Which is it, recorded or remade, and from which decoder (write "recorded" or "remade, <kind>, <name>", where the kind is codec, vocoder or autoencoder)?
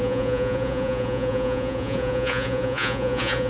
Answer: remade, vocoder, Vocos